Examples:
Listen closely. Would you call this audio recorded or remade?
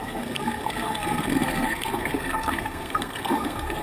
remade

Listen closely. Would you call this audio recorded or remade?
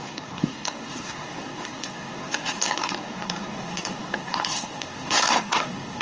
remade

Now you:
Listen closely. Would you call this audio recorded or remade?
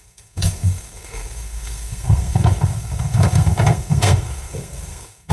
remade